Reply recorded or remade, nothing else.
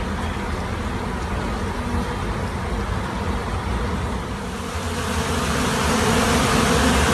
recorded